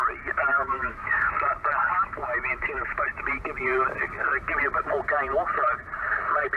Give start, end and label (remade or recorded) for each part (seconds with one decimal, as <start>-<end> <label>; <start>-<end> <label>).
0.0-0.5 recorded; 0.5-1.3 remade; 1.3-1.8 recorded; 1.8-3.0 remade; 3.0-6.6 recorded